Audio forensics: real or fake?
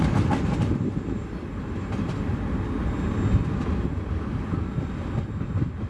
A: real